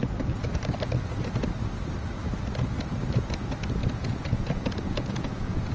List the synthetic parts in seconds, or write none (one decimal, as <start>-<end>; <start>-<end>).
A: 3.8-5.7